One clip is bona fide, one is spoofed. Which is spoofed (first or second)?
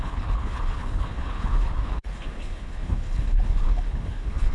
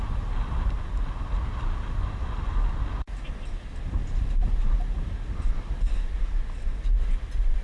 first